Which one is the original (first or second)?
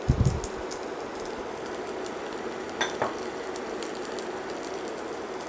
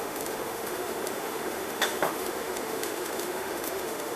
first